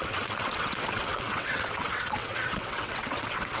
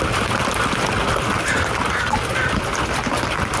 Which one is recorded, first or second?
second